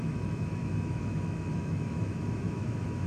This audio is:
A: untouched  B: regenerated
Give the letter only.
B